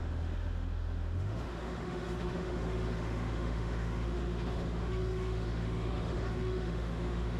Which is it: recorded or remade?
remade